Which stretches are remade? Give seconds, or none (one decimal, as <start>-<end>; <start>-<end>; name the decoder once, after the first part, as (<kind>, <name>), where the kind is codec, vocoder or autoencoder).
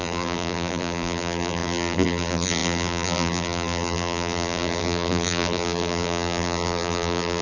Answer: 0.0-7.4 (vocoder, BigVGAN v2)